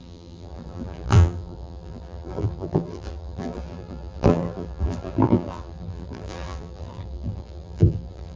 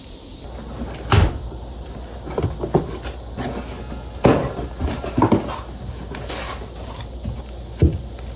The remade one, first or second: first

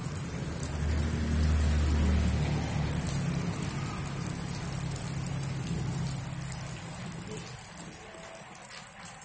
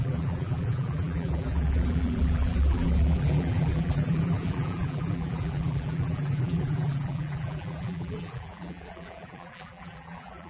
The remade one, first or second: second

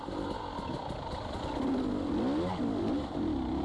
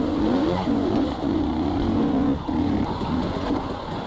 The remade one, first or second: second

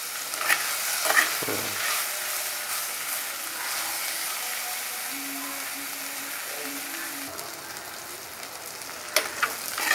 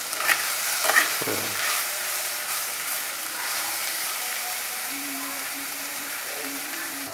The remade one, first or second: second